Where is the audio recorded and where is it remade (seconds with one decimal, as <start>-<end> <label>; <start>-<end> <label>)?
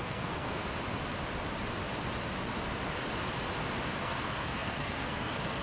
0.0-0.6 remade; 0.6-4.0 recorded; 4.0-5.6 remade